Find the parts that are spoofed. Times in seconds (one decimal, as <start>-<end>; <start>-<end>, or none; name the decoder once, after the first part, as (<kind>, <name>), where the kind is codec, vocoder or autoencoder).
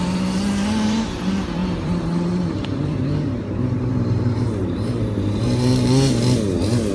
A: 1.6-5.7 (vocoder, BigVGAN v2)